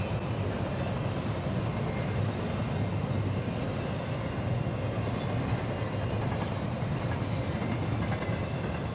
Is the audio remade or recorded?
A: recorded